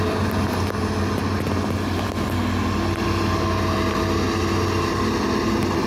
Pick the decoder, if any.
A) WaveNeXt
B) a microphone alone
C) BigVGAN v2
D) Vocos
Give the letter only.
B